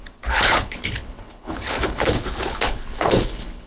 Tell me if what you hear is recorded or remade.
remade